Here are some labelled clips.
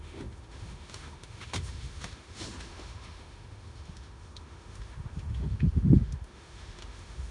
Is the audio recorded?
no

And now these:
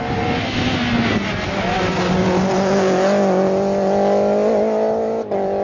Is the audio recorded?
yes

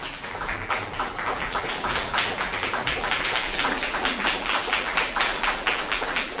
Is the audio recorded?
no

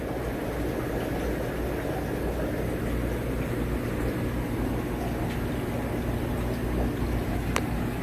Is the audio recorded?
yes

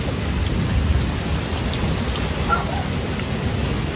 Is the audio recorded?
yes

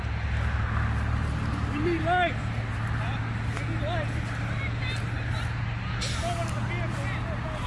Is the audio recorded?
yes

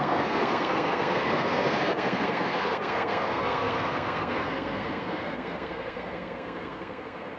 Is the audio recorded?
no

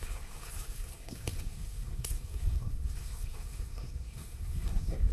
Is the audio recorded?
no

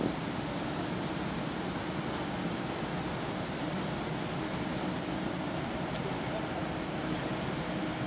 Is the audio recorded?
no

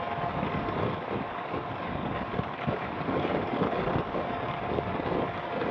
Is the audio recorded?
no